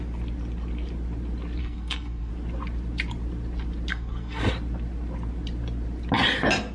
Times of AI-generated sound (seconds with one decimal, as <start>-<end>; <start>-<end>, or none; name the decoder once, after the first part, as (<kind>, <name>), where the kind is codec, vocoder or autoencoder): 1.6-2.3 (codec, SNAC); 3.9-4.4